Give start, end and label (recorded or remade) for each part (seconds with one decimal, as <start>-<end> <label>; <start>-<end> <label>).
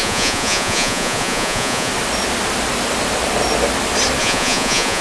0.0-1.9 remade; 1.9-4.2 recorded; 4.2-5.0 remade